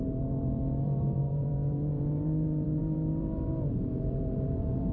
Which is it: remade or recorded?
remade